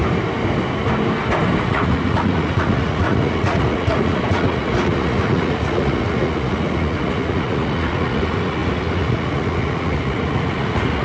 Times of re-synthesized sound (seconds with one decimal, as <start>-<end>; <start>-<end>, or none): 1.6-11.0